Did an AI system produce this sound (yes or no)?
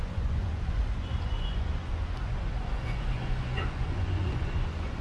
yes